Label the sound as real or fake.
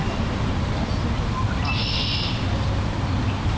real